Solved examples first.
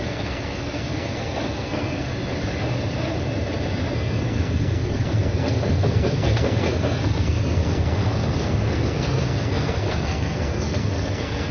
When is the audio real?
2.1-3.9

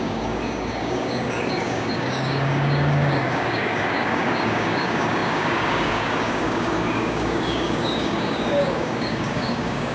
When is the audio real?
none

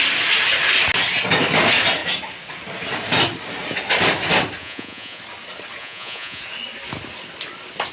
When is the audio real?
0.0-4.6; 5.2-5.8; 6.4-7.9

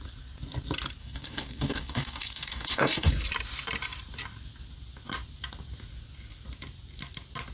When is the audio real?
0.0-1.0; 3.1-7.5

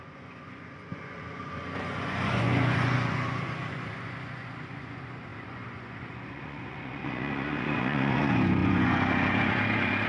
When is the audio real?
none

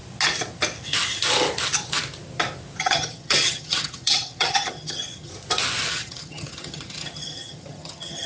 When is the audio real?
0.0-2.8; 5.3-5.9